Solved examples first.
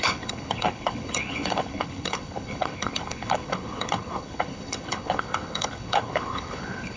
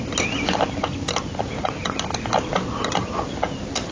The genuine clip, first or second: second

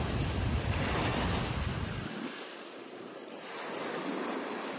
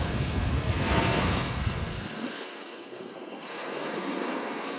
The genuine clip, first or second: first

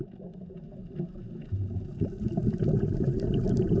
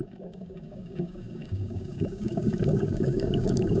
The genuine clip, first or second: first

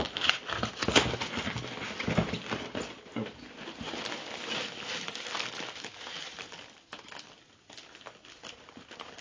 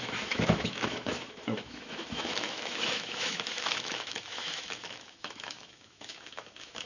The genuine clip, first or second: first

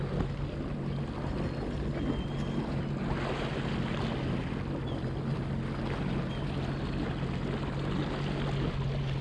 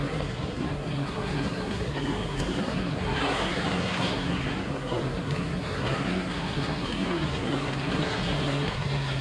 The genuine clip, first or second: first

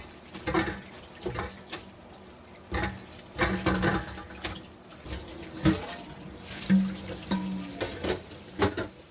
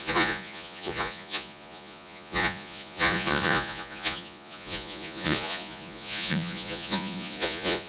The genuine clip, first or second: first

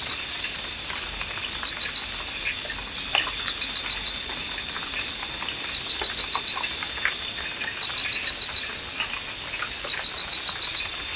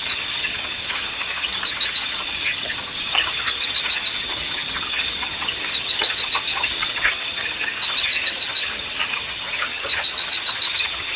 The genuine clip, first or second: first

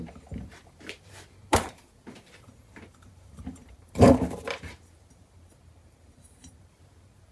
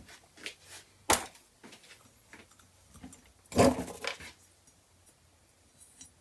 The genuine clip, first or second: second